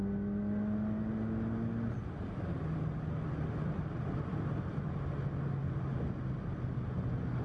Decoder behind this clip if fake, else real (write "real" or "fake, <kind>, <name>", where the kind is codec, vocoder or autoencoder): real